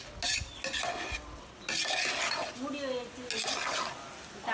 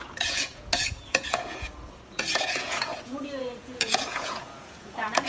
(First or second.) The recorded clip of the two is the first